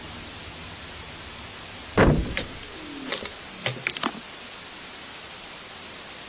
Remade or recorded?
recorded